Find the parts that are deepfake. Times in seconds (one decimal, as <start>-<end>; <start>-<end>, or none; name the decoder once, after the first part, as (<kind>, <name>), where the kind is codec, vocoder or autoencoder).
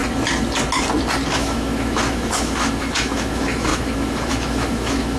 1.3-5.2 (autoencoder, DAC-VAE)